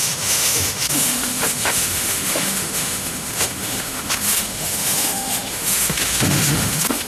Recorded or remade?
remade